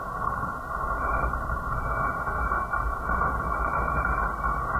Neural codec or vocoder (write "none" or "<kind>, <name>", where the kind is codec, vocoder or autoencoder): none